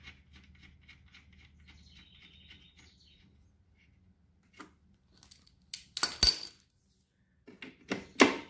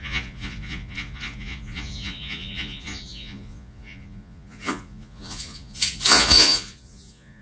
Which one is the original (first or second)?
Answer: first